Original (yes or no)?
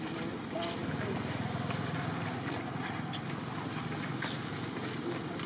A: yes